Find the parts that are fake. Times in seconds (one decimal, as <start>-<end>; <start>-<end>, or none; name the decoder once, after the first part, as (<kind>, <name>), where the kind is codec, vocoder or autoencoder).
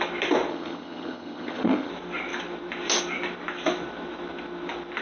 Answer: 0.5-1.9 (vocoder, HiFi-GAN)